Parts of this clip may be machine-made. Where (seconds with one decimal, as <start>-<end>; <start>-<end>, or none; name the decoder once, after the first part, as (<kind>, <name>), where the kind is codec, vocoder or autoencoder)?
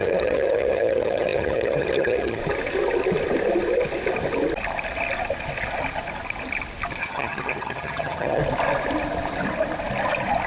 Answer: 0.0-2.4 (vocoder, HiFi-GAN); 7.0-8.4